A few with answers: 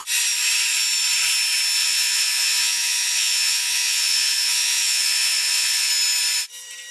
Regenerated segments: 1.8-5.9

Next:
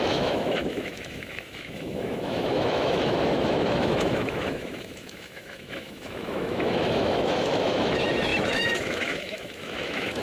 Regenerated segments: 0.0-10.2

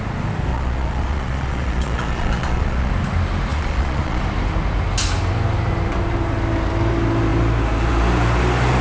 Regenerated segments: 0.5-2.9; 3.5-4.2

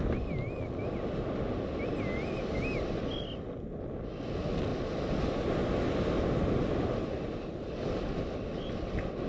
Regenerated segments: none

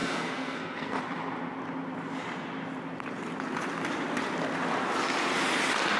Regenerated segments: 0.0-1.0

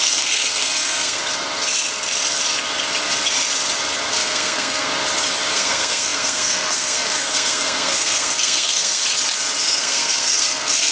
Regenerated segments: 0.0-1.2; 4.1-4.9; 5.5-9.0; 9.6-10.9

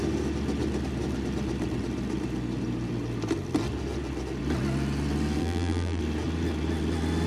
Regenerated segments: 5.4-6.0